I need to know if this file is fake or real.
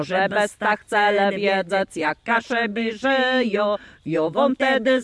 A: real